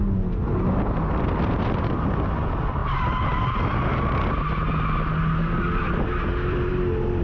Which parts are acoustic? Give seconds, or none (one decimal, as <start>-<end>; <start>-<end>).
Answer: 0.0-7.2